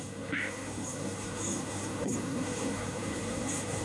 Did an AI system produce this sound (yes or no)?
yes